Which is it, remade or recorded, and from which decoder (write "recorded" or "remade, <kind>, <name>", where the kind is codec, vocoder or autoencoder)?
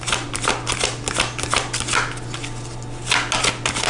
recorded